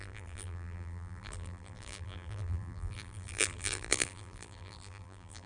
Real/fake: fake